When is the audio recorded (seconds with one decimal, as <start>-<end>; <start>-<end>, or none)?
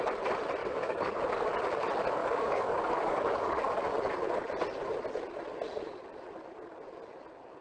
0.0-0.6; 1.2-2.2; 3.6-7.6